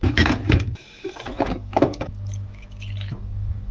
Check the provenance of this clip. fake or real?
fake